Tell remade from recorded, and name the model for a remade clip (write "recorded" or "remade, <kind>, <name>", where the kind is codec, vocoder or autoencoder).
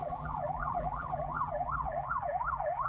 remade, vocoder, BigVGAN v2